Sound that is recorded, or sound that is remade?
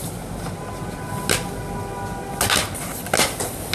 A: recorded